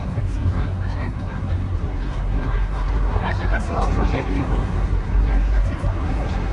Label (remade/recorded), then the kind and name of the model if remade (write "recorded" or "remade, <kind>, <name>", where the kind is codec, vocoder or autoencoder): remade, codec, SNAC